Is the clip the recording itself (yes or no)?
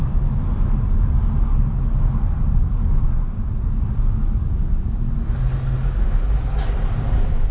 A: yes